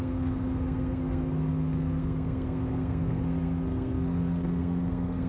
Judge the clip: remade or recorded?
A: remade